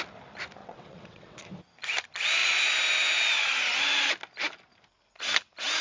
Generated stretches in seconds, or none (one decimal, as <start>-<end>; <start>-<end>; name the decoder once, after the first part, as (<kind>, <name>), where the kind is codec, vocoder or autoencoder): 0.6-1.4 (vocoder, WaveNeXt)